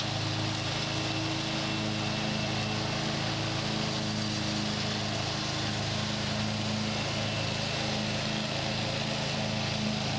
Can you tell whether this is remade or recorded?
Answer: recorded